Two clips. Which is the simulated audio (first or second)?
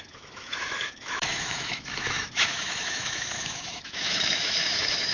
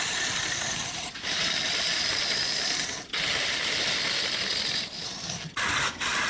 first